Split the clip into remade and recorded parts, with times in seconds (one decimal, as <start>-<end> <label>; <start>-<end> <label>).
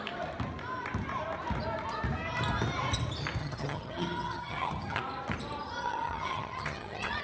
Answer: 0.0-3.4 recorded; 3.4-5.0 remade; 5.0-5.8 recorded; 5.8-7.2 remade